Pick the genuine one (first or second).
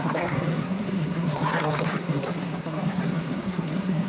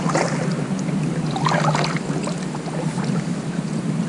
second